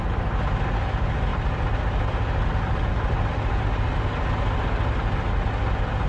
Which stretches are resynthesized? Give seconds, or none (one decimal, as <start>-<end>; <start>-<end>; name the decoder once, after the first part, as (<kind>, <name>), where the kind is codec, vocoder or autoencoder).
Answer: none